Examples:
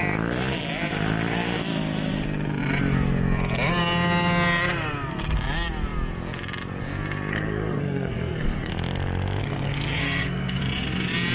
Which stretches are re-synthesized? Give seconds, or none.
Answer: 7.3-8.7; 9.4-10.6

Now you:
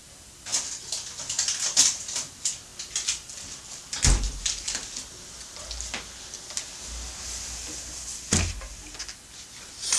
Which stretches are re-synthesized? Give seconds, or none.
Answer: none

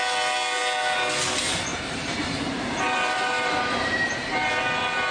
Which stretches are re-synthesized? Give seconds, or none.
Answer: 1.7-4.5

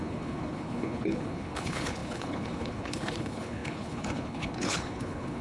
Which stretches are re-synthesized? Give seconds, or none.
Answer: 0.0-5.4

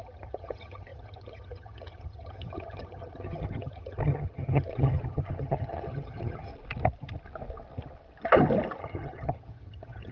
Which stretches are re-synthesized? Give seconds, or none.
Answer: 0.0-6.5; 8.8-10.1

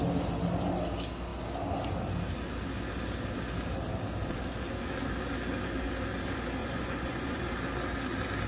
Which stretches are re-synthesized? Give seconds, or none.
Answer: 6.6-7.5

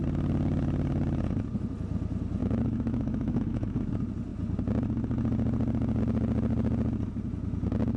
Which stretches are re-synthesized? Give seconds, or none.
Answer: 2.4-3.9

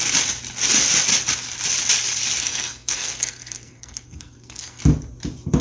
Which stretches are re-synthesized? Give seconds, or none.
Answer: 2.4-4.8